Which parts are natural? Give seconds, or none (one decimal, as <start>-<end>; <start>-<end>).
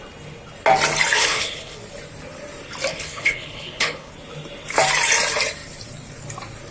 0.0-1.2; 1.8-2.9; 4.1-6.7